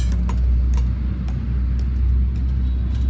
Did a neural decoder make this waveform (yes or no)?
no